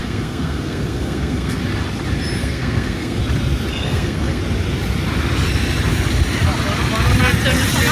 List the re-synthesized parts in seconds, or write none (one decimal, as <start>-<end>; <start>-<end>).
0.0-1.6; 2.4-3.2; 3.7-4.4